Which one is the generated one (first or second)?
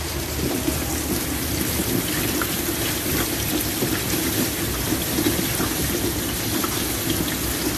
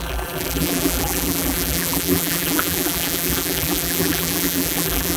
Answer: second